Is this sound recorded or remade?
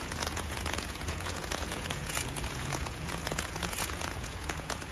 remade